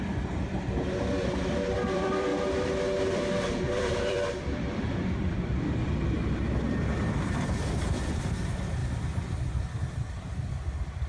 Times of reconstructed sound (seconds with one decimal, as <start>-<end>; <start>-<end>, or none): 0.0-2.3; 3.1-8.8; 9.6-11.1